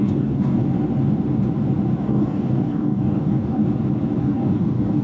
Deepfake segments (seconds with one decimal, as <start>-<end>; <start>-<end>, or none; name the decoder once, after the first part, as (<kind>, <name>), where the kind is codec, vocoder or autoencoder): 0.0-0.6 (codec, DAC); 2.0-3.6; 4.2-5.0